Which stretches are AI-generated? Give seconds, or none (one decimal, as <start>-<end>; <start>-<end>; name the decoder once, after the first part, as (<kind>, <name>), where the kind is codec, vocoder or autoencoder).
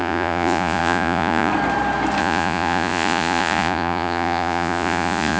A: 0.0-1.5 (vocoder, Vocos); 2.2-5.4